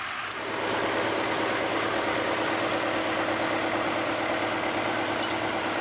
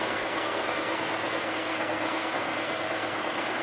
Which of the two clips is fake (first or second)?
second